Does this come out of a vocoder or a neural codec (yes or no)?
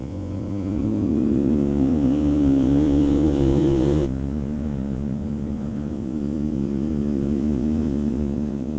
yes